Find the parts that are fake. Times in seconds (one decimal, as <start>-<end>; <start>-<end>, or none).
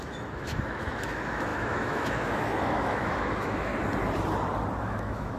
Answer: 0.0-3.7; 4.8-5.4